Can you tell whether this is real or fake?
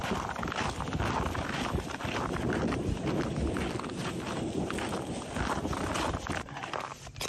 real